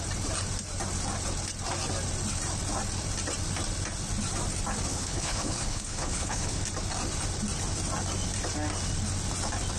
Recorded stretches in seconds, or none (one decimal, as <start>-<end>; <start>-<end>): 0.0-4.9; 6.6-9.8